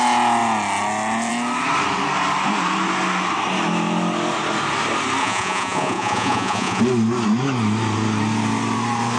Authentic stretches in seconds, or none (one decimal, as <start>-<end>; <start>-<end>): 0.0-5.2; 6.8-9.2